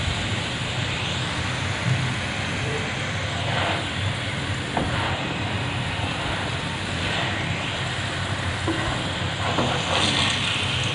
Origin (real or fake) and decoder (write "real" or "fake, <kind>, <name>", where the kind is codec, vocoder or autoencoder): real